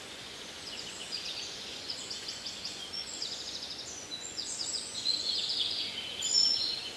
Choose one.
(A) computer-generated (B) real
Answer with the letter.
A